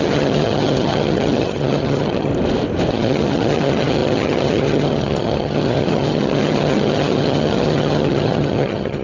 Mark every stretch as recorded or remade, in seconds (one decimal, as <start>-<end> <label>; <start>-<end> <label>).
0.0-2.3 remade; 2.3-2.9 recorded; 2.9-9.0 remade